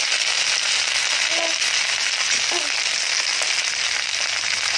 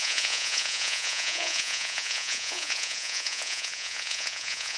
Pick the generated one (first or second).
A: second